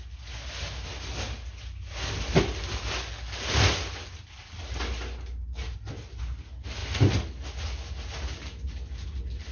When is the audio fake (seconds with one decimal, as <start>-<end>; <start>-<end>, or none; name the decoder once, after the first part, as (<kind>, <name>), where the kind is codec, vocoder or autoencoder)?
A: none